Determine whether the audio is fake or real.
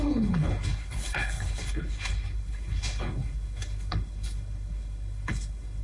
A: fake